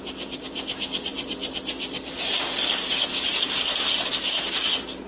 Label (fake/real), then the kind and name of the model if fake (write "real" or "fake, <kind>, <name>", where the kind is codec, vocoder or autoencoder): real